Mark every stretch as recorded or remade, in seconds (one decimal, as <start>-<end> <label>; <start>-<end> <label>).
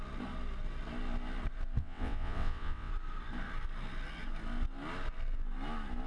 0.0-1.8 recorded; 1.8-2.9 remade; 2.9-6.1 recorded